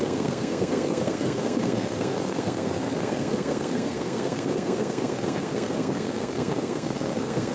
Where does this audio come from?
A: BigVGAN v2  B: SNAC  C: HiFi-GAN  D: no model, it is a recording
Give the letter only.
B